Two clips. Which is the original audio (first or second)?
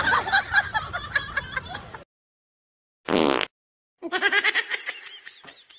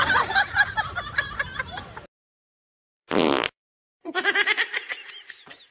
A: first